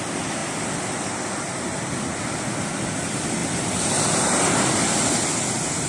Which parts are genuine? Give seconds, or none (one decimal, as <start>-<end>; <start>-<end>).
0.0-5.9